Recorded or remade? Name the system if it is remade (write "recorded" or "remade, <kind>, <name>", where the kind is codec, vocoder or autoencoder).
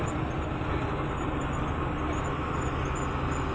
recorded